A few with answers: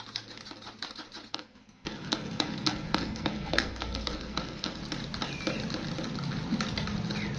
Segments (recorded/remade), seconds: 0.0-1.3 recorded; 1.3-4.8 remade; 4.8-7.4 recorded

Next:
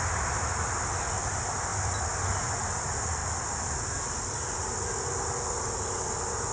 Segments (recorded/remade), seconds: 0.0-6.5 recorded

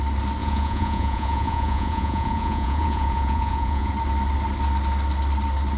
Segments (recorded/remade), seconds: 0.0-0.4 recorded; 0.4-3.9 remade; 3.9-5.8 recorded

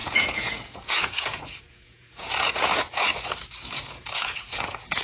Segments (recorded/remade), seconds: 0.0-3.1 remade; 3.1-3.7 recorded; 3.7-5.0 remade

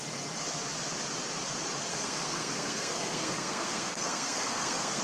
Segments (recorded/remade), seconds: 0.0-1.9 recorded; 1.9-5.0 remade

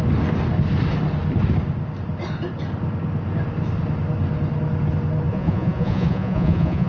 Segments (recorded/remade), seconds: 0.0-5.3 recorded; 5.3-6.9 remade

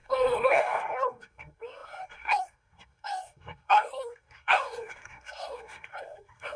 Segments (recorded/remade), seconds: 0.0-6.6 remade

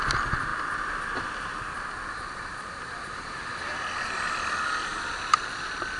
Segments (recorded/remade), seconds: 0.0-6.0 recorded